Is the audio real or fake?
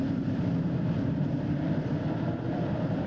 real